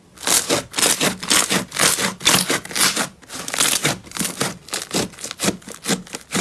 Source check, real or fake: real